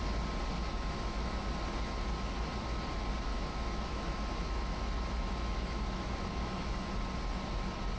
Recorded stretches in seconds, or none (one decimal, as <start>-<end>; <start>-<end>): 0.0-0.6; 1.5-3.3; 6.8-8.0